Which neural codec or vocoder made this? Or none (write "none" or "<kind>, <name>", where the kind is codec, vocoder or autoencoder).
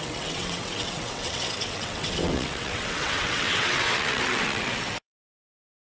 vocoder, WaveNeXt